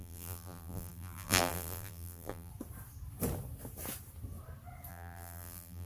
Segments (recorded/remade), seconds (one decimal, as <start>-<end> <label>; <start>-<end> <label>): 0.0-2.5 remade; 2.5-4.9 recorded; 4.9-5.9 remade

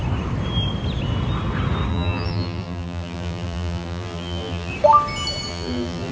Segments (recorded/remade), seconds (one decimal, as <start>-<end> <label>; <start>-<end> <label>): 0.0-1.9 recorded; 1.9-4.7 remade; 4.7-5.5 recorded; 5.5-6.1 remade

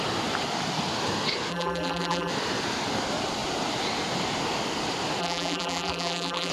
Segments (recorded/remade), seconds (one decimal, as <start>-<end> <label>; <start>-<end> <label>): 0.0-1.5 recorded; 1.5-2.3 remade; 2.3-5.2 recorded; 5.2-6.5 remade

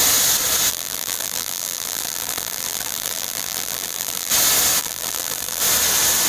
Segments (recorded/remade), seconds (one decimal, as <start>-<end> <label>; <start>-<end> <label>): 0.0-0.7 recorded; 0.7-4.3 remade; 4.3-4.8 recorded; 4.8-5.6 remade; 5.6-6.3 recorded

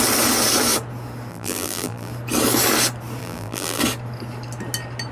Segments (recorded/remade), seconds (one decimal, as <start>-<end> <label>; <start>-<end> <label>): 0.0-1.3 recorded; 1.3-2.1 remade; 2.1-3.2 recorded; 3.2-3.8 remade; 3.8-5.1 recorded

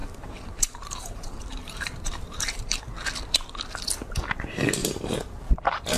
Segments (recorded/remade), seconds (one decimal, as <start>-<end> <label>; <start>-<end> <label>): 0.0-2.8 remade; 2.8-4.8 recorded; 4.8-5.5 remade; 5.5-6.0 recorded

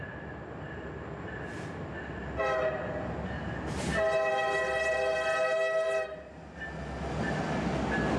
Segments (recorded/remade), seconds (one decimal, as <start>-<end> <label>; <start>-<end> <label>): 0.0-8.2 recorded